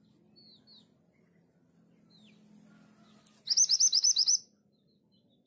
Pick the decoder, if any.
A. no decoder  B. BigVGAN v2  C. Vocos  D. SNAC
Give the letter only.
A